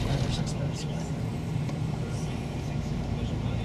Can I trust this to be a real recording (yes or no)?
yes